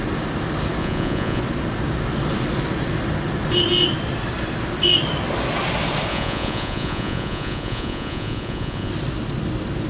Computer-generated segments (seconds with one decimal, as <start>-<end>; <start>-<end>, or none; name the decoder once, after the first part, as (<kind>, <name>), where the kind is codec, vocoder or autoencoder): 0.8-1.4 (vocoder, Vocos); 6.1-8.9